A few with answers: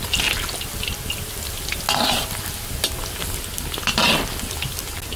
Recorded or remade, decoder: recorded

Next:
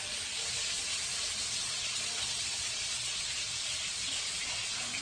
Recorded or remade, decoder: remade, vocoder, Vocos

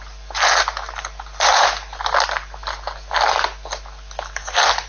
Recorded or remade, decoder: recorded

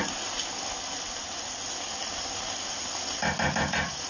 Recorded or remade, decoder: recorded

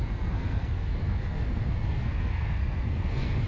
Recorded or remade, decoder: remade, codec, SNAC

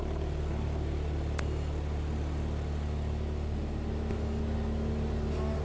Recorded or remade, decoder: recorded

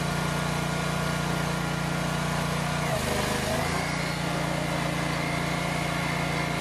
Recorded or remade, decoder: recorded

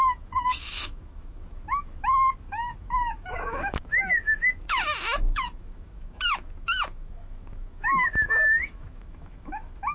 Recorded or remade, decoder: remade, autoencoder, DAC-VAE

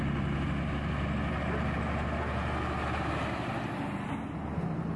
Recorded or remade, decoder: recorded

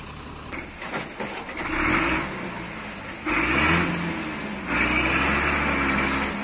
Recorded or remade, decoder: recorded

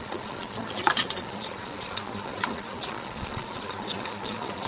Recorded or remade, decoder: remade, vocoder, Vocos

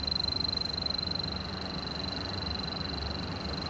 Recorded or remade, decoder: recorded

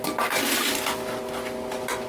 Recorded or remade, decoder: recorded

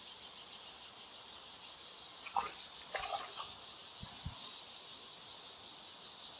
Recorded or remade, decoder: recorded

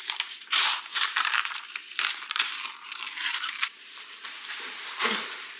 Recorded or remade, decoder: remade, vocoder, BigVGAN v2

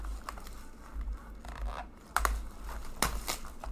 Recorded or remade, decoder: recorded